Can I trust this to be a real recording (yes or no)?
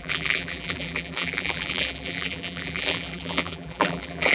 no